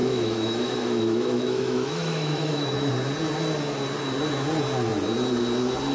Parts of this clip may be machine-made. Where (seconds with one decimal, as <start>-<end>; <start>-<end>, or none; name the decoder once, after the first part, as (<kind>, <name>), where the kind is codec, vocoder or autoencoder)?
0.0-2.9 (autoencoder, DAC-VAE)